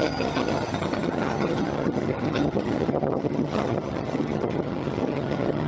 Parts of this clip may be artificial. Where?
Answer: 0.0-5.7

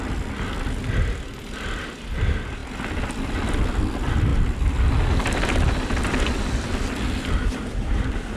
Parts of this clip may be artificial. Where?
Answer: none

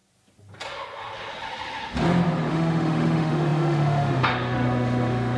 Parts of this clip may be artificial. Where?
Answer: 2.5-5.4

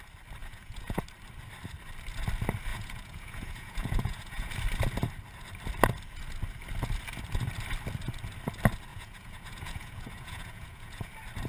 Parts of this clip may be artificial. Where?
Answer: 0.4-1.0; 2.7-4.5; 8.9-11.1